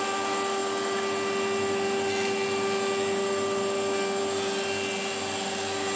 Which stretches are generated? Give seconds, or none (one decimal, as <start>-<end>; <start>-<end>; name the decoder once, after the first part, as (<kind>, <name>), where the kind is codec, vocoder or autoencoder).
none